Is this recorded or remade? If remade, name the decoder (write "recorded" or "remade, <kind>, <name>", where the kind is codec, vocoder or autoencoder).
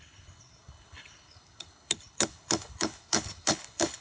remade, codec, HILCodec